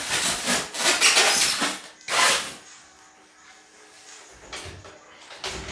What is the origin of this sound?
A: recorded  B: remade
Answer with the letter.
A